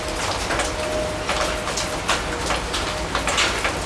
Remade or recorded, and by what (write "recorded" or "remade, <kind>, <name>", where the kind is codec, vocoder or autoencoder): recorded